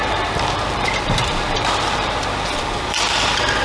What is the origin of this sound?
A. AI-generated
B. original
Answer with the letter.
A